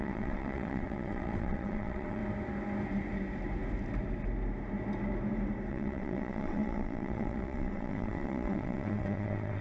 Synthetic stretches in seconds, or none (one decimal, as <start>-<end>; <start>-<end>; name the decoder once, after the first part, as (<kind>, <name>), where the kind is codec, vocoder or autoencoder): 0.0-2.2 (vocoder, WaveNeXt); 5.7-9.6